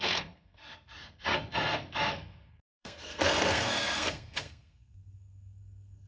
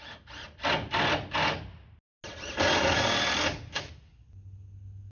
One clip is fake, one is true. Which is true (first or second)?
second